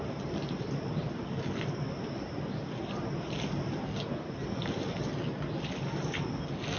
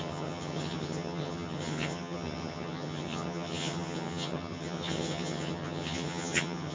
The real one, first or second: first